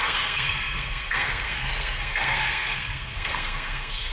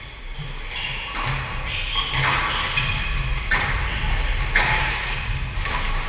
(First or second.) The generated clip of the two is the first